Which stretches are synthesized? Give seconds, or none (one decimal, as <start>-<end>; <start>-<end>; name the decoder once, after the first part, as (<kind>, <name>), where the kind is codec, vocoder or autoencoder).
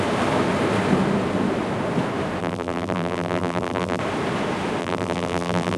2.4-4.0 (vocoder, BigVGAN v2); 4.8-5.8